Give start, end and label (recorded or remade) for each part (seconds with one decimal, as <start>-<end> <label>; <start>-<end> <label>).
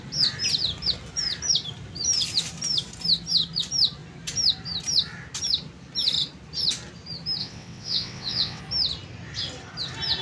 0.0-7.4 recorded; 7.4-8.6 remade; 8.6-10.2 recorded